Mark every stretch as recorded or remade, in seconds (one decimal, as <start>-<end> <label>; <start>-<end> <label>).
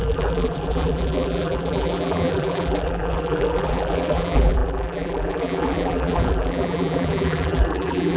0.0-8.2 remade